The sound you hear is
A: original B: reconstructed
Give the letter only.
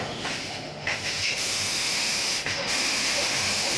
B